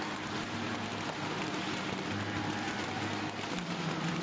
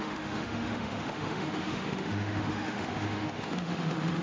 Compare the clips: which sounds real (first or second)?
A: first